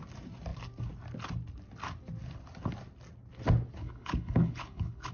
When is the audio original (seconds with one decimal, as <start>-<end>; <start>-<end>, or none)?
0.0-3.8